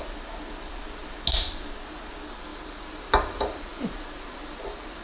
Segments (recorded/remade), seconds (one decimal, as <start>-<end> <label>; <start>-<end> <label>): 0.0-2.5 recorded; 2.5-5.0 remade